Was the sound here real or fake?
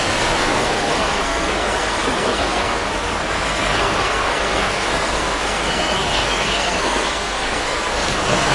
fake